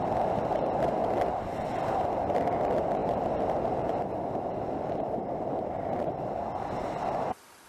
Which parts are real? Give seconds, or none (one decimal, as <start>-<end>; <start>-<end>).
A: 1.0-1.5; 3.0-7.7